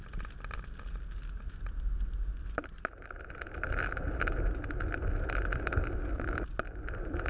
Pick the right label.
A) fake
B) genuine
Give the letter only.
B